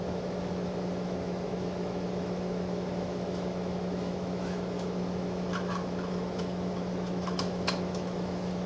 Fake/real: fake